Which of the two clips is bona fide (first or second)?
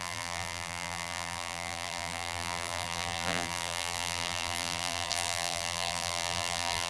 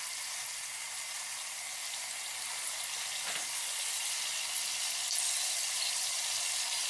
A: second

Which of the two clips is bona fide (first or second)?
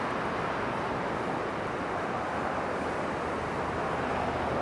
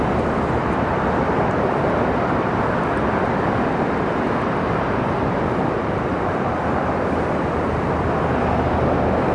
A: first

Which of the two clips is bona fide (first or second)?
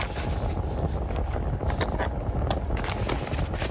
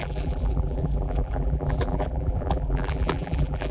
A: first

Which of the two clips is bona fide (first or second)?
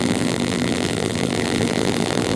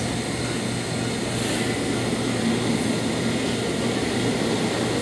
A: second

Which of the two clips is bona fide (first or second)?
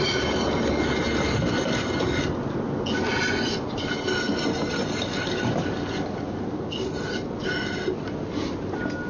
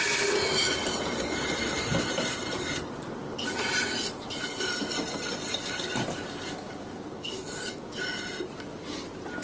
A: first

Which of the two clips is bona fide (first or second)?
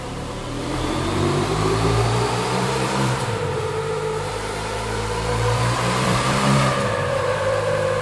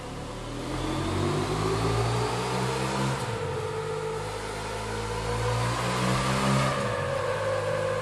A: second